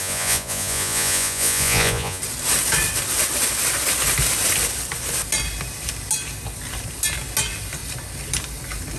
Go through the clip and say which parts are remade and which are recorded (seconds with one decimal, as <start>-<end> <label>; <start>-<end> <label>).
0.0-2.2 remade; 2.2-9.0 recorded